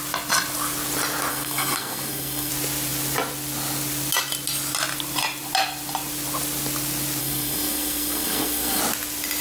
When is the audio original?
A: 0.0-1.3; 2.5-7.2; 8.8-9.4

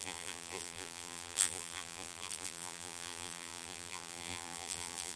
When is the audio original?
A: none

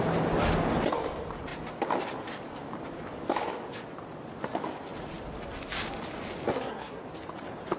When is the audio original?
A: 0.0-6.5; 7.0-7.8

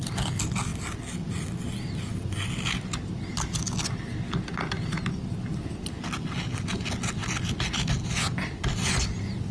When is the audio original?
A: 0.0-9.5

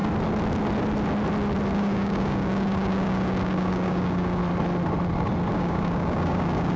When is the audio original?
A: 0.0-1.7; 4.4-5.5

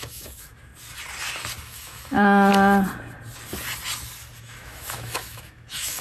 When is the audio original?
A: 0.7-1.6; 2.5-4.4